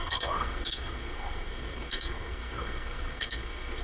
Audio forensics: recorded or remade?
remade